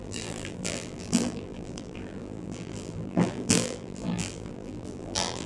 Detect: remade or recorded remade